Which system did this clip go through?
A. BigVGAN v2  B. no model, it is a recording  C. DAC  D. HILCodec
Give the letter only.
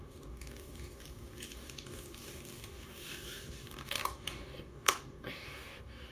C